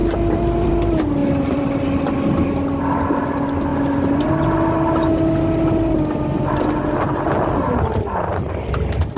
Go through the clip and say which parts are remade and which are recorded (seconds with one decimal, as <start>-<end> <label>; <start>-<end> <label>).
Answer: 0.0-0.7 remade; 0.7-1.2 recorded; 1.2-2.2 remade; 2.2-9.2 recorded